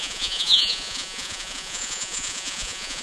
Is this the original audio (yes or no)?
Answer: no